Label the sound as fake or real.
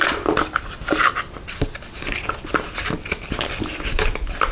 real